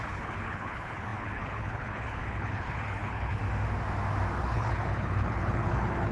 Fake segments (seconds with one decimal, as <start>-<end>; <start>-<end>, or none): 0.0-3.4; 4.4-6.1